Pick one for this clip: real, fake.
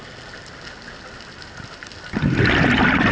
real